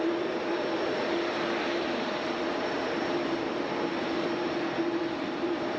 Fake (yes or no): yes